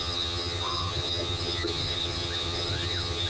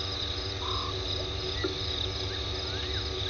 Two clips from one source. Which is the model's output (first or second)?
first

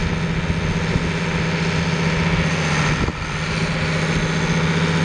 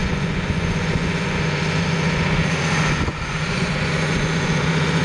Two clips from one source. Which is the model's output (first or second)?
second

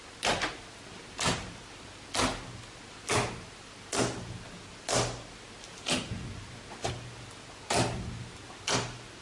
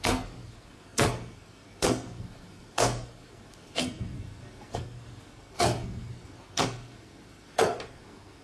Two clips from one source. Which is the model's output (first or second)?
second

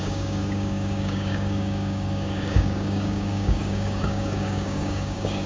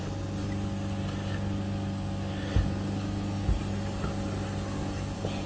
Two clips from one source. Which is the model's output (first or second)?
first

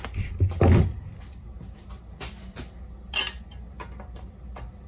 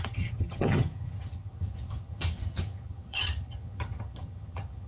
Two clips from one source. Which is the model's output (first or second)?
second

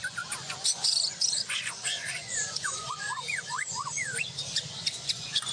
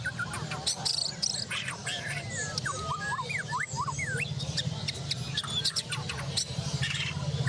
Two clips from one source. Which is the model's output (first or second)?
first